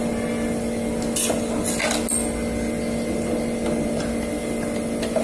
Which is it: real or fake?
real